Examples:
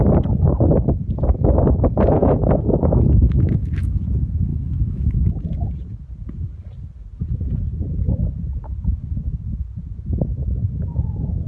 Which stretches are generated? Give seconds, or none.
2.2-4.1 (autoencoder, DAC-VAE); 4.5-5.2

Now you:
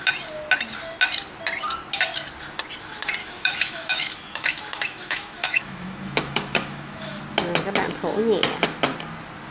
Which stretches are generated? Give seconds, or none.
3.2-7.2 (autoencoder, DAC-VAE)

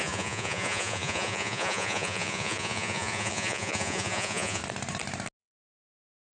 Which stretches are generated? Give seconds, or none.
0.0-4.6 (vocoder, Vocos); 5.4-6.3

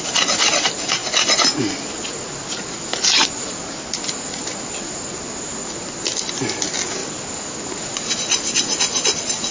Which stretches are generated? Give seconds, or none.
5.6-6.3 (vocoder, BigVGAN v2); 7.0-8.1